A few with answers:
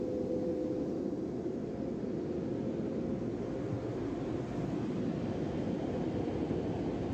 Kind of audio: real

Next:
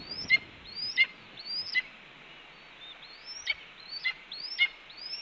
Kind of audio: real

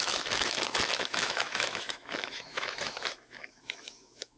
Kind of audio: fake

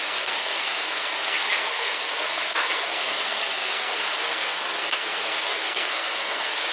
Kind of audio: fake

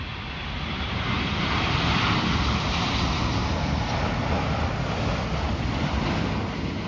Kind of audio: real